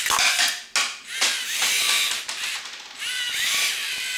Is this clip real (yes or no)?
yes